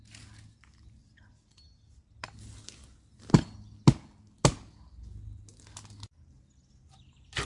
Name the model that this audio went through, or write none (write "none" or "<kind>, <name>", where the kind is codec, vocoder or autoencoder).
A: none